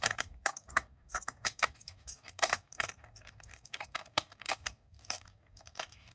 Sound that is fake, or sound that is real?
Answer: fake